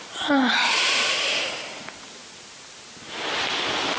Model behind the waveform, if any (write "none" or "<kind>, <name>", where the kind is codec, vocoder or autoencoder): none